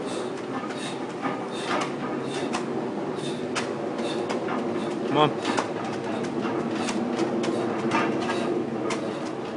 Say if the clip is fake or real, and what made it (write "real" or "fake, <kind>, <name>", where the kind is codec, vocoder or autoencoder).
real